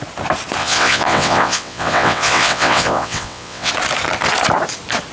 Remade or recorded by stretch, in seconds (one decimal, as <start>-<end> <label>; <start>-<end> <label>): 0.0-0.6 recorded; 0.6-3.7 remade; 3.7-5.1 recorded